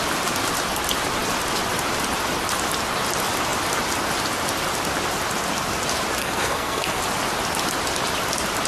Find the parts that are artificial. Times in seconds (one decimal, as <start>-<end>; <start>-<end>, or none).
6.2-7.0